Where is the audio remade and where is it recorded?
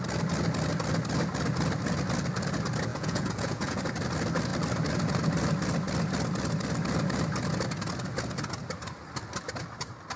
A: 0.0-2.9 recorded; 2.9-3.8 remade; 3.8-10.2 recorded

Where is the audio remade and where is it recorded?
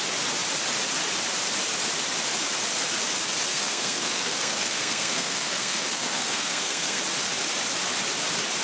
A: 0.0-3.5 recorded; 3.5-7.0 remade; 7.0-8.6 recorded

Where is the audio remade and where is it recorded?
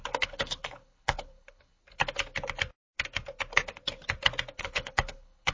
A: 0.0-1.8 remade; 1.8-4.6 recorded; 4.6-5.5 remade